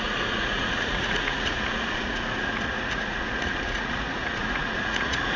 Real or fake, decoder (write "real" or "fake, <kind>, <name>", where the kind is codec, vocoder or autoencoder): fake, vocoder, Vocos